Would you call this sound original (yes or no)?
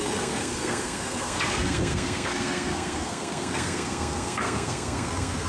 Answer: no